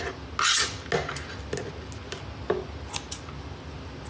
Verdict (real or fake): real